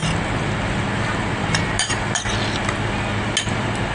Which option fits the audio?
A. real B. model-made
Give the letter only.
A